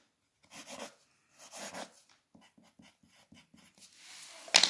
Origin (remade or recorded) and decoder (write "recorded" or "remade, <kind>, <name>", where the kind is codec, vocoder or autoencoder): recorded